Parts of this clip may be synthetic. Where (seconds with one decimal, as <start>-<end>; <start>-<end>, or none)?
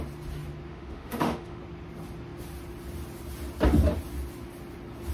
0.7-1.6